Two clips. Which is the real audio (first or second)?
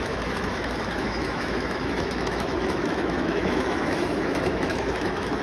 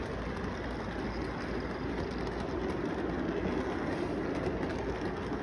second